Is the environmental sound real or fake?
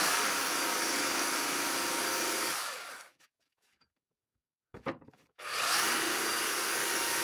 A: fake